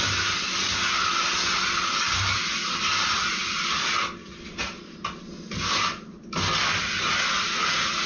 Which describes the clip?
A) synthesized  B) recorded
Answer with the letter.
B